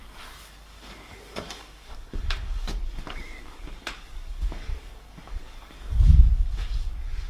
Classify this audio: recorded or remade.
remade